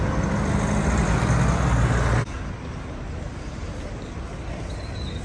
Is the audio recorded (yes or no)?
yes